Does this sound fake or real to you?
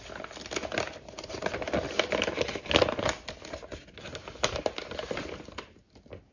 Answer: real